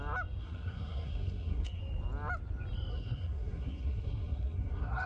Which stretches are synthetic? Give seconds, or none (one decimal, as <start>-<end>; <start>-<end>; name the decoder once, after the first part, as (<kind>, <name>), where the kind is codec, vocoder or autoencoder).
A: 0.4-1.8 (codec, SNAC); 2.9-5.1